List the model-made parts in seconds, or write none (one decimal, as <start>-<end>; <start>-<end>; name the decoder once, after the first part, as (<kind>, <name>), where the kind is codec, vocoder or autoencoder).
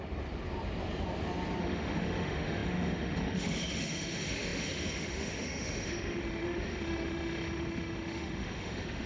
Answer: 1.6-9.1 (autoencoder, DAC-VAE)